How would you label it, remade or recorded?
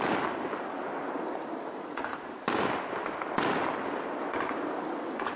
recorded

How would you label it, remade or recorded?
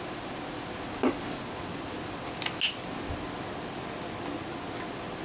recorded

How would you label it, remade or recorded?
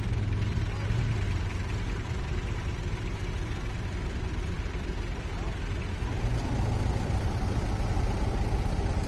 recorded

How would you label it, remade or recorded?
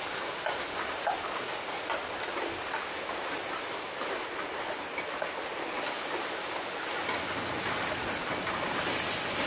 recorded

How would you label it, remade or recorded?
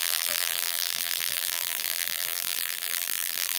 remade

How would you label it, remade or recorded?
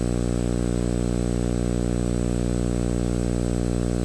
recorded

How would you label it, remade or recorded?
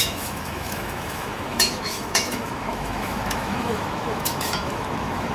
remade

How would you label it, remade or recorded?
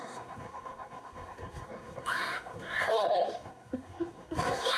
remade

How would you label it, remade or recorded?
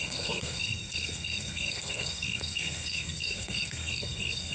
remade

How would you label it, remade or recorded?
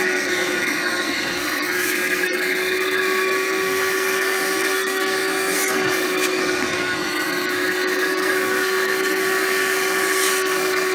remade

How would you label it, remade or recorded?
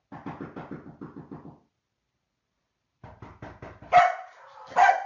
recorded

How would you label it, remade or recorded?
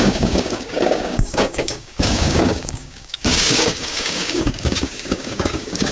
remade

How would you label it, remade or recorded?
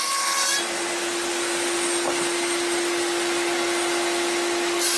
recorded